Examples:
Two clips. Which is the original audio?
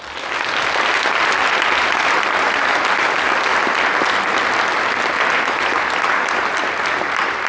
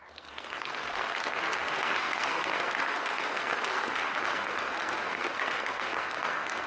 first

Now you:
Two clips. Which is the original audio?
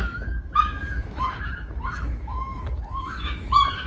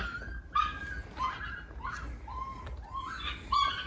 second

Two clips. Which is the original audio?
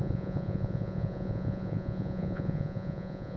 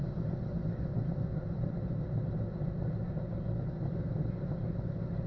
second